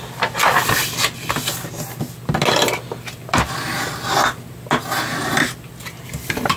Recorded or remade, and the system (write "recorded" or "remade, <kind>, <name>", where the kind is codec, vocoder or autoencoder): recorded